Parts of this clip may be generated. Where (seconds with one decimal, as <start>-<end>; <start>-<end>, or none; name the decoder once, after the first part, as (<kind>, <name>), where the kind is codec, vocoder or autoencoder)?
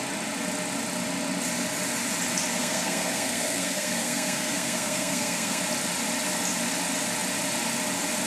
2.6-5.6 (codec, SNAC)